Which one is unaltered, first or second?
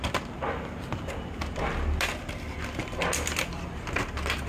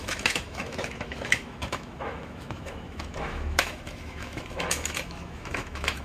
first